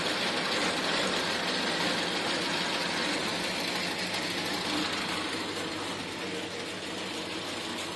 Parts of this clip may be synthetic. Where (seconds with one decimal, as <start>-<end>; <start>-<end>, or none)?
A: none